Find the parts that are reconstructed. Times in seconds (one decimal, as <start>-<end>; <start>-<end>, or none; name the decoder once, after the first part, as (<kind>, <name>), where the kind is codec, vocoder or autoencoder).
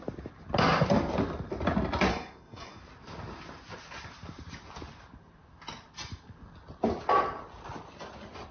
2.1-2.8 (codec, DAC)